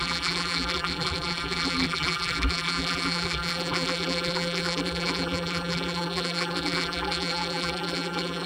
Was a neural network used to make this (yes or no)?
yes